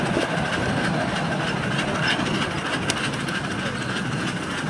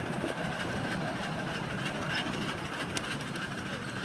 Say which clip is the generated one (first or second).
second